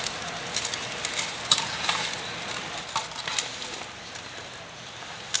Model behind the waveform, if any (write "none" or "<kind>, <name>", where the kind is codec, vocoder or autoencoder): none